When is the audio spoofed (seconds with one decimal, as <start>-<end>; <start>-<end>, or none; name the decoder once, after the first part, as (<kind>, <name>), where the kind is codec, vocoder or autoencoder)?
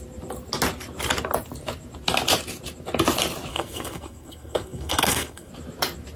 3.5-5.5 (codec, SNAC)